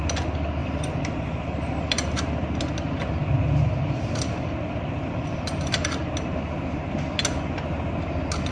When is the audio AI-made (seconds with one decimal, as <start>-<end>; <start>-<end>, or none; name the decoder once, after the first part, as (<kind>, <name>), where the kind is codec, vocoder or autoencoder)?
0.6-2.6 (vocoder, BigVGAN v2); 3.2-6.1